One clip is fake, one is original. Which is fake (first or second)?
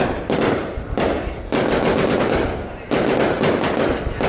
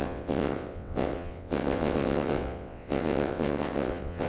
second